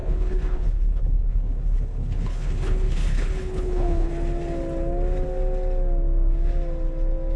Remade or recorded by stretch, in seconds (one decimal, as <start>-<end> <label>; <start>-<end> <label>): 0.0-4.1 remade; 4.1-7.4 recorded

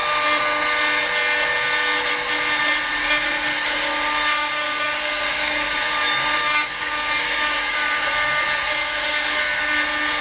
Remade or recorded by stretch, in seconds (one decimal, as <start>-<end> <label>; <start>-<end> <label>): 0.0-4.4 recorded; 4.4-8.4 remade; 8.4-8.8 recorded; 8.8-9.6 remade; 9.6-10.2 recorded

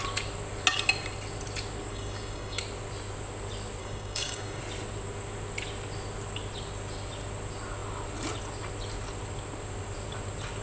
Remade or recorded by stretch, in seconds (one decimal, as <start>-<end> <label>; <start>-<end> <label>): 0.0-1.9 recorded; 1.9-2.6 remade; 2.6-3.8 recorded; 3.8-4.6 remade; 4.6-10.6 recorded

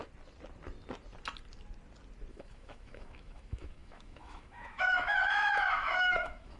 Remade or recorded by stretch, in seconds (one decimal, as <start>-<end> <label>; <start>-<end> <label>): 0.0-2.3 recorded; 2.3-6.6 remade

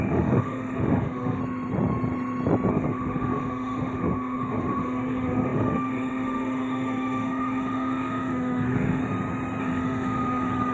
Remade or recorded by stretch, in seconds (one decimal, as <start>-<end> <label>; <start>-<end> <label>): 0.0-1.4 remade; 1.4-2.7 recorded; 2.7-9.0 remade; 9.0-9.6 recorded; 9.6-10.7 remade

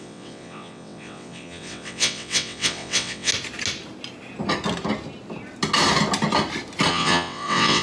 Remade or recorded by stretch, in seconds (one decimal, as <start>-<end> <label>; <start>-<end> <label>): 0.0-3.3 remade; 3.3-6.9 recorded; 6.9-7.8 remade